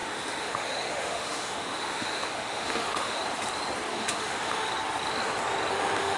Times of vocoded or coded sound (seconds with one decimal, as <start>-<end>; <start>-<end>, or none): 0.0-3.2; 3.9-4.7; 5.7-6.2